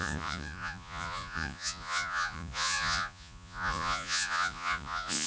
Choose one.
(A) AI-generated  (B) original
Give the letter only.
A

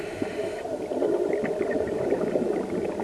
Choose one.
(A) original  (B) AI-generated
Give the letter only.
A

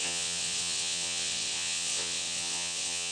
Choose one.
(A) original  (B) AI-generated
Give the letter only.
B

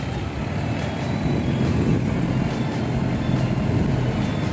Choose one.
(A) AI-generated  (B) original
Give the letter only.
B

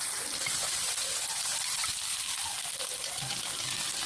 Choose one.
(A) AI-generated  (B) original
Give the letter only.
B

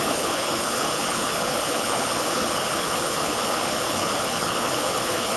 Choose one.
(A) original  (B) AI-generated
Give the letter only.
B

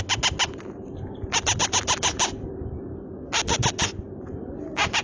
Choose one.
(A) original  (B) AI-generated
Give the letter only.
A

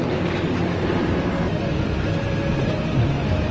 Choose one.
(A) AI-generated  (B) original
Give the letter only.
B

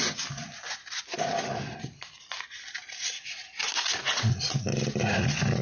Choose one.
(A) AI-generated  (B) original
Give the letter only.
B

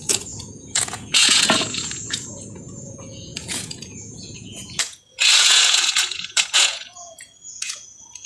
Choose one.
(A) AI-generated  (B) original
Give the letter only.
A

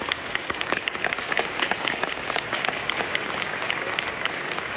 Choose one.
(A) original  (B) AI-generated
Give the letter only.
B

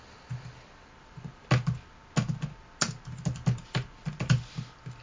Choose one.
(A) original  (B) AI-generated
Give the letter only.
A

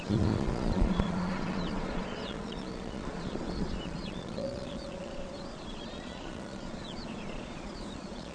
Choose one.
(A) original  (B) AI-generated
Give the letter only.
B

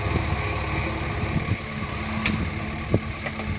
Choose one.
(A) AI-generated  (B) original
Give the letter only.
B